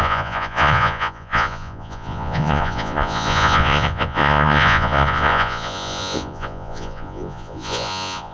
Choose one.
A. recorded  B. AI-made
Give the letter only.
B